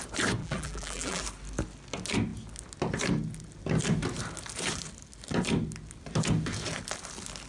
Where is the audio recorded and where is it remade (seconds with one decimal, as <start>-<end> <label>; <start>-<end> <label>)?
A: 0.0-0.4 recorded; 0.4-1.2 remade; 1.2-7.5 recorded